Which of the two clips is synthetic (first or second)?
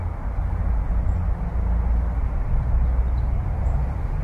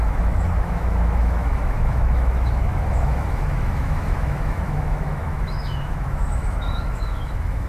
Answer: second